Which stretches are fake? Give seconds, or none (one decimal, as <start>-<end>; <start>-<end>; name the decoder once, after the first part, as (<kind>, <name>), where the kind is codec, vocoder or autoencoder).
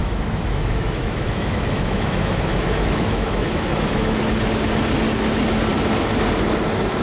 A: 0.0-4.2 (autoencoder, DAC-VAE)